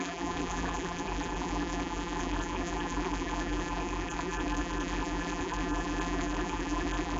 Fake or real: fake